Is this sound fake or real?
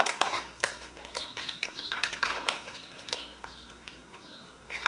fake